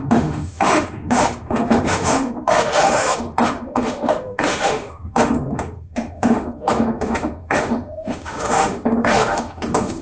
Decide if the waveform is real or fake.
fake